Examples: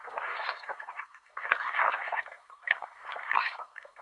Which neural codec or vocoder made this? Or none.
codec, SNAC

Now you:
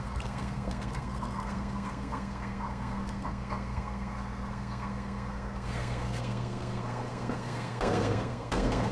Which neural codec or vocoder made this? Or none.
codec, SNAC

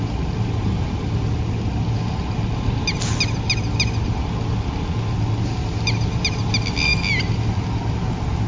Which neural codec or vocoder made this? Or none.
none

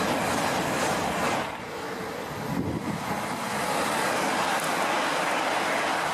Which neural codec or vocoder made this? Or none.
none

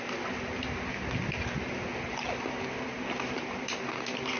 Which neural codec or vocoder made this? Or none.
none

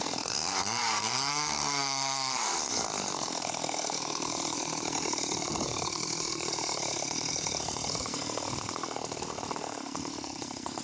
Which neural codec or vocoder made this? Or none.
codec, SNAC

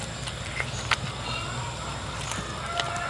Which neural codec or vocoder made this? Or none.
none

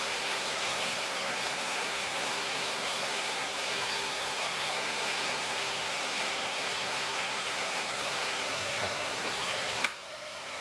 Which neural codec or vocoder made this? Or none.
codec, SNAC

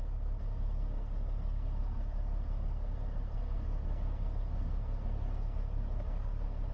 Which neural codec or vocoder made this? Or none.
codec, SNAC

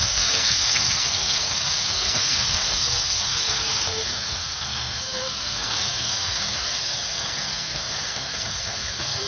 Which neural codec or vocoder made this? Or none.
codec, SNAC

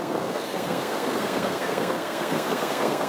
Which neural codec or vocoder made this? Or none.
codec, SNAC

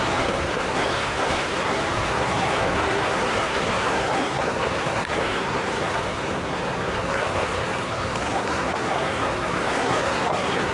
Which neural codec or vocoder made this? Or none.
codec, SNAC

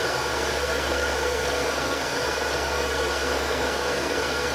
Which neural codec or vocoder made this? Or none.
codec, SNAC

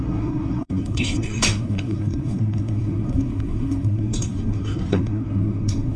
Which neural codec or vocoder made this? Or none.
codec, SNAC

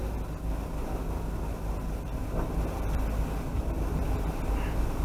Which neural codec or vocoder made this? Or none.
none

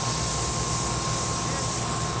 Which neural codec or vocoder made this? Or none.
none